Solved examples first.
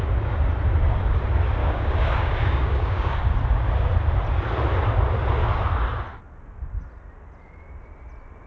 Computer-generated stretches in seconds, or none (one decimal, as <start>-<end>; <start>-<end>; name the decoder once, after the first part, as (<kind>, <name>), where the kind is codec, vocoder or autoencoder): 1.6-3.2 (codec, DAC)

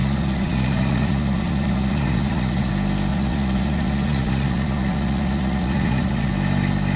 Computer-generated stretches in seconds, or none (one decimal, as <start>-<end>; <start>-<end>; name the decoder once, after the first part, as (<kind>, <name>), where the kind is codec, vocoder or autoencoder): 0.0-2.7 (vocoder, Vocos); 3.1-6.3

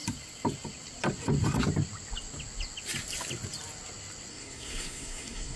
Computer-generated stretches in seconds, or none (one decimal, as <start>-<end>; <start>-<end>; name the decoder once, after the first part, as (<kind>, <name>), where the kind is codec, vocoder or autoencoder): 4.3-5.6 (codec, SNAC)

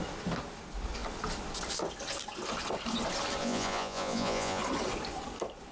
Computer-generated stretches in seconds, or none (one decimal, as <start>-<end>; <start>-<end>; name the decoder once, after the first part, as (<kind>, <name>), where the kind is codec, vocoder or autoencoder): 3.4-4.6 (vocoder, Vocos)